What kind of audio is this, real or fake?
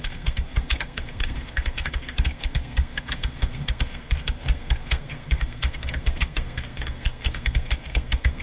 fake